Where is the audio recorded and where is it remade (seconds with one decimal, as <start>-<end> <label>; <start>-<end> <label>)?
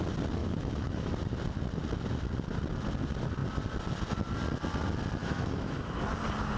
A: 0.0-0.4 recorded; 0.4-1.1 remade; 1.1-5.2 recorded; 5.2-6.0 remade; 6.0-6.6 recorded